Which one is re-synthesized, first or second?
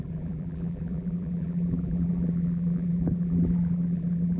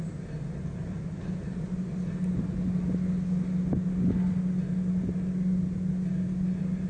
first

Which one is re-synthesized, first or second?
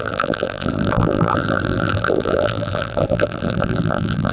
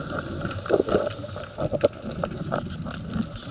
first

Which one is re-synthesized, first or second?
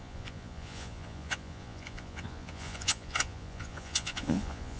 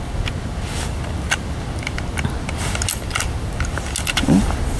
first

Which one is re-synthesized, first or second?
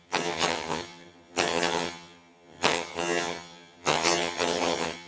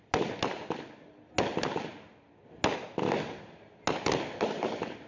first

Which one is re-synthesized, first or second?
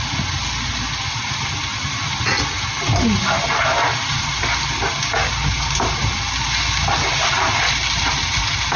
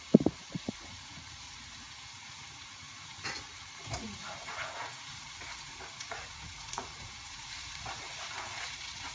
second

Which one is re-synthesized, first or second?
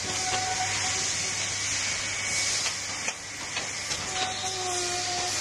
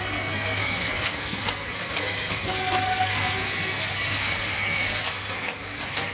second